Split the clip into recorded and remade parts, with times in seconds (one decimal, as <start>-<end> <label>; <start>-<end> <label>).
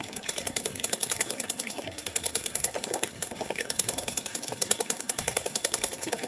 0.0-6.3 remade